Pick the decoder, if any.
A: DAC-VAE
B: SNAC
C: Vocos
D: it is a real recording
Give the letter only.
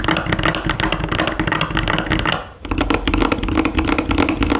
D